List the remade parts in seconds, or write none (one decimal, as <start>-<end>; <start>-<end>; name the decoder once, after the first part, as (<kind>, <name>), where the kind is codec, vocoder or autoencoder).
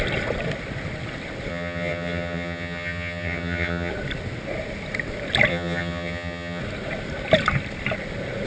1.5-3.9 (vocoder, HiFi-GAN); 5.5-6.6